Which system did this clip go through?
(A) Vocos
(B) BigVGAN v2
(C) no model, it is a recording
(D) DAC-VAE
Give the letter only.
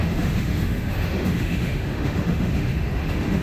D